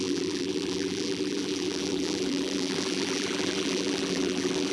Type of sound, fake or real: fake